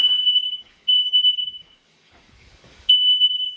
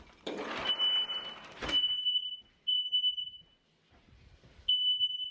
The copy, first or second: first